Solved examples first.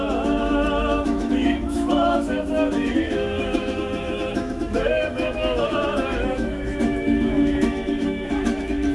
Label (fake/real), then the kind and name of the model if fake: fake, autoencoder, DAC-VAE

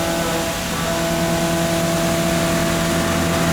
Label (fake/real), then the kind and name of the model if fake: real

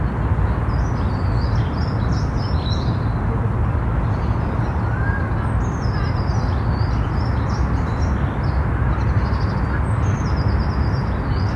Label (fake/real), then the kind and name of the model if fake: real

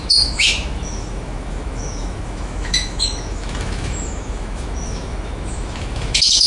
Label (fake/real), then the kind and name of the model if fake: fake, autoencoder, DAC-VAE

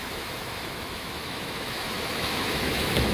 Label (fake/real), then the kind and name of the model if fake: fake, autoencoder, DAC-VAE